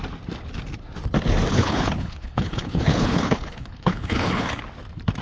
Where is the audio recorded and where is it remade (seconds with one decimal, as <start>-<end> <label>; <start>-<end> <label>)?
0.0-1.5 recorded; 1.5-4.6 remade; 4.6-5.2 recorded